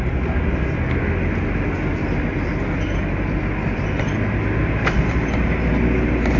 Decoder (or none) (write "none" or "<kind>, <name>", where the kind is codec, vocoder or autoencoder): none